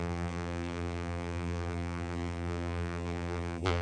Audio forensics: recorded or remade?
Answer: remade